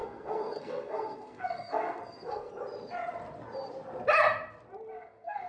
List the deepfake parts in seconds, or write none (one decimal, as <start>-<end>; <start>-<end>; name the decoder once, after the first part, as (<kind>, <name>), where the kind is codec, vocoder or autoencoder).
0.0-2.5 (codec, SNAC); 4.9-5.5